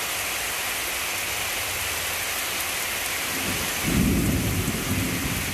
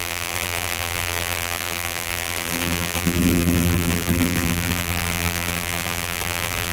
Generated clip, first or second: second